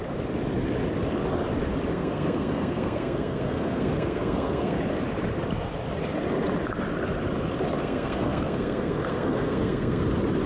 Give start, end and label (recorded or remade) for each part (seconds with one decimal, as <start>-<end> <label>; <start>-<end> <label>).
0.0-1.9 recorded; 1.9-4.8 remade; 4.8-7.7 recorded; 7.7-10.0 remade; 10.0-10.5 recorded